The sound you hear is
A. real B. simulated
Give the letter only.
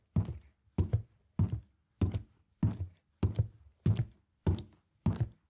A